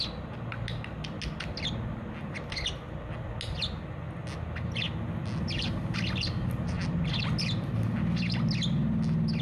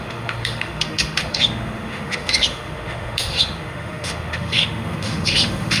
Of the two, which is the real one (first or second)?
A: first